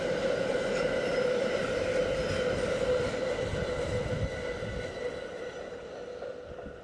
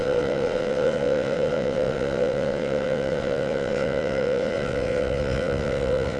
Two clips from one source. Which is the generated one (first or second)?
second